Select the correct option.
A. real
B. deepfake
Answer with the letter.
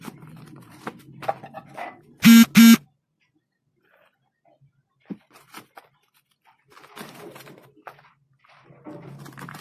A